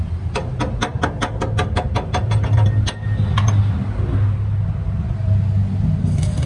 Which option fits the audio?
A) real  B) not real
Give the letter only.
A